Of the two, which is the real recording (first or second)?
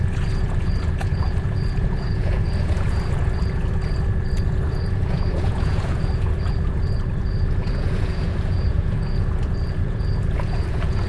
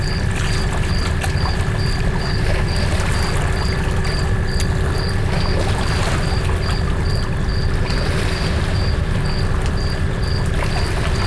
second